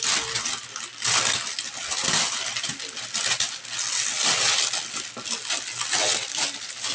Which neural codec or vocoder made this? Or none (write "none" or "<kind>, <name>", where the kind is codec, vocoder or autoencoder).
none